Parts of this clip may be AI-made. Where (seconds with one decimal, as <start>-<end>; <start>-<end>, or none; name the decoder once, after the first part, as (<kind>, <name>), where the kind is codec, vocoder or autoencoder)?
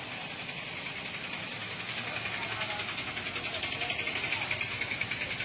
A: none